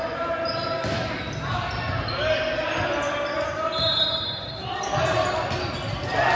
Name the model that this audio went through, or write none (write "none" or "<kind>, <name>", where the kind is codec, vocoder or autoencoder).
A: none